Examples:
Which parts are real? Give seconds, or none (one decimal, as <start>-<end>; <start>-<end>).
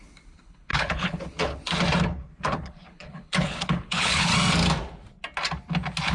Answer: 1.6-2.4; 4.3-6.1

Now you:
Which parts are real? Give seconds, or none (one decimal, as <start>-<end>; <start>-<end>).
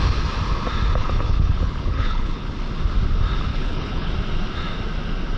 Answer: 0.0-1.0; 2.5-3.5; 4.1-5.4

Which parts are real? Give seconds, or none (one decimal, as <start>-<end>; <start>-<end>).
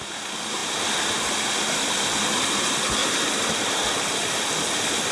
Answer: 0.0-5.1